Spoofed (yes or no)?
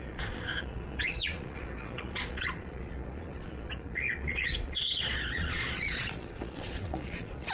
yes